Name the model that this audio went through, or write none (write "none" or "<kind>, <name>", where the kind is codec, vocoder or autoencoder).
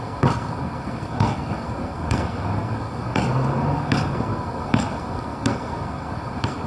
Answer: codec, SNAC